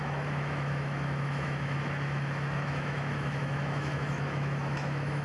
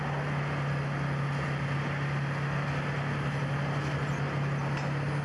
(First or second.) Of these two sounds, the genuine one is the second